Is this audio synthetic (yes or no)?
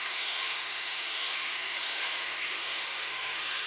yes